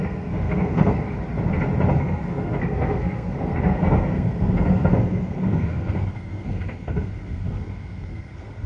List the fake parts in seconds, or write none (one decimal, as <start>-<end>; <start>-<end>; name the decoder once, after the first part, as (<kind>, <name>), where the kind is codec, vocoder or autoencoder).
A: 0.0-1.1 (codec, SNAC); 2.0-8.7